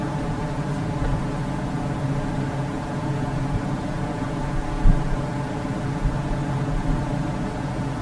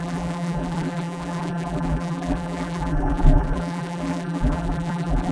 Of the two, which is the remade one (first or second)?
second